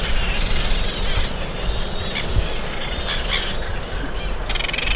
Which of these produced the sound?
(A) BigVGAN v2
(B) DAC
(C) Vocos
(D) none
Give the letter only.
D